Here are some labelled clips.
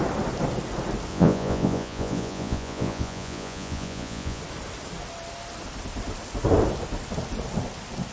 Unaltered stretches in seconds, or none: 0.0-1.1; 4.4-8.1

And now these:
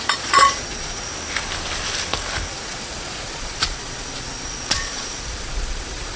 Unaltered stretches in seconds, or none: 1.1-2.5

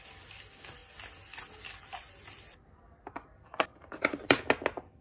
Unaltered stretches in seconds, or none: 0.0-3.7; 4.4-5.0

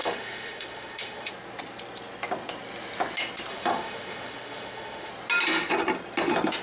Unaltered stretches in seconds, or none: 1.3-3.5; 5.1-6.6

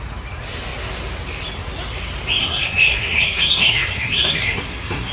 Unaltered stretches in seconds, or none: 0.0-2.4

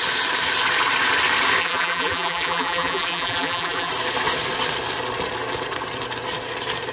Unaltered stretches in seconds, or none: 0.0-1.6; 3.9-6.9

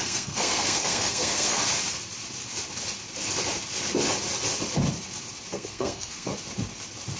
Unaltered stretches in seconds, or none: 1.6-5.5; 6.3-7.2